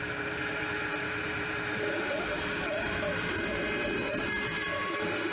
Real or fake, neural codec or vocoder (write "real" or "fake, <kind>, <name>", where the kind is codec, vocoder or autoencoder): fake, vocoder, BigVGAN v2